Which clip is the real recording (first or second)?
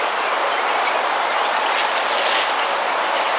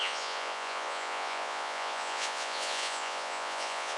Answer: first